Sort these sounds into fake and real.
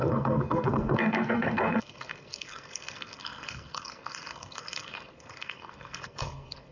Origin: fake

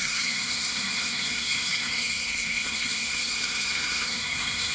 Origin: fake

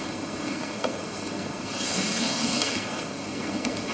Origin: fake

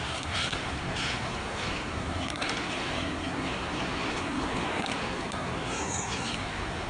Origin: fake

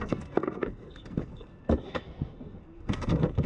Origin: fake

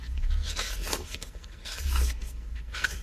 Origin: fake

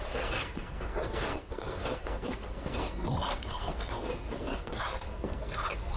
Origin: fake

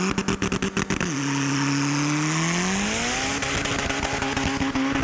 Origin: real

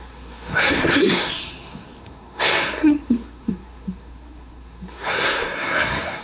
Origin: fake